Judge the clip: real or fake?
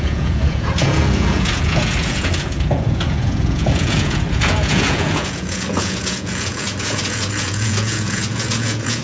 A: fake